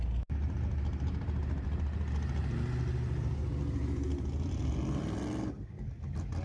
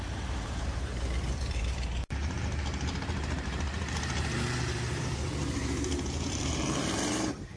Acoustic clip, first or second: first